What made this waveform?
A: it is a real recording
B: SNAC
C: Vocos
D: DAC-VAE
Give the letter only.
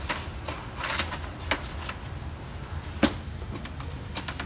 A